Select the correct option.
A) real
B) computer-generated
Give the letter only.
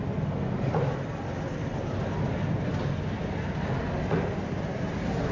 A